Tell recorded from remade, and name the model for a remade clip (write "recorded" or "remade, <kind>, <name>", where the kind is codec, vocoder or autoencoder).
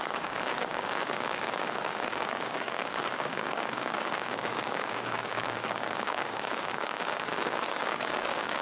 remade, codec, DAC